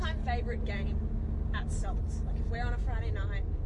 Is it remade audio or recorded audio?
recorded